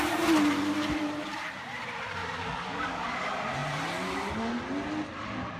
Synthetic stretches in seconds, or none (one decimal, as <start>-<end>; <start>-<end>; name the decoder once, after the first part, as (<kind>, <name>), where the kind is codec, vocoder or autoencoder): 2.2-3.0 (codec, DAC)